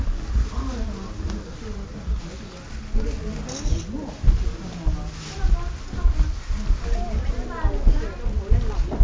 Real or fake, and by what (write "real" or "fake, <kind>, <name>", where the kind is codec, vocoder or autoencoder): real